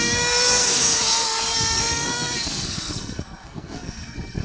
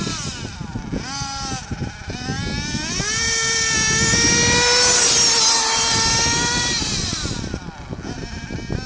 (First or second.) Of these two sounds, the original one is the second